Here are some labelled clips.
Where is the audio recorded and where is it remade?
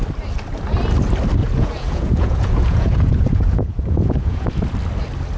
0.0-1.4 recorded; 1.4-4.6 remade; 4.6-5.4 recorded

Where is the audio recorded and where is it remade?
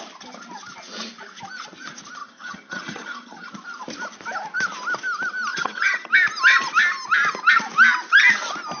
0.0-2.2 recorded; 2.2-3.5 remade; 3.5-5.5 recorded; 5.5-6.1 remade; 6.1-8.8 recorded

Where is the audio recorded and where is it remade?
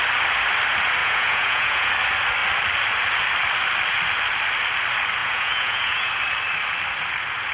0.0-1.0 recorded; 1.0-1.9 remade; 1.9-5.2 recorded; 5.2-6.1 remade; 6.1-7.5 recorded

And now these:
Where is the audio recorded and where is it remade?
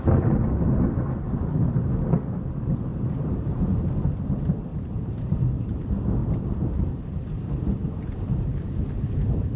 0.0-2.9 recorded; 2.9-3.8 remade; 3.8-4.7 recorded; 4.7-5.8 remade; 5.8-6.2 recorded; 6.2-9.6 remade